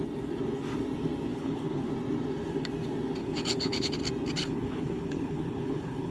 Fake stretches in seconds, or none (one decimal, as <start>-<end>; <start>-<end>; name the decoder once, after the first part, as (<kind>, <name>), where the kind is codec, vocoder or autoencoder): 1.3-1.9 (codec, HILCodec); 3.2-4.0; 4.4-6.1